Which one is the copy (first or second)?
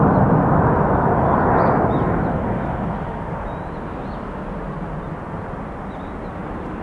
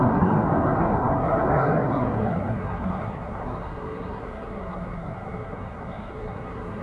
second